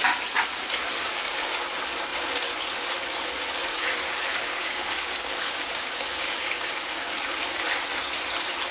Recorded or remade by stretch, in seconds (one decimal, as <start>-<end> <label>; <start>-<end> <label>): 0.0-1.1 recorded; 1.1-1.7 remade; 1.7-3.7 recorded; 3.7-7.6 remade; 7.6-8.7 recorded